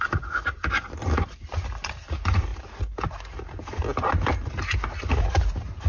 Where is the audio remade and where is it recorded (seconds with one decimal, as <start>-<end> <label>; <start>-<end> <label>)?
0.0-2.5 remade; 2.5-5.3 recorded; 5.3-5.9 remade